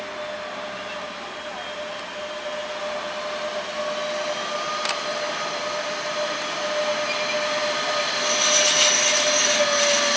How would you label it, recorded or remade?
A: recorded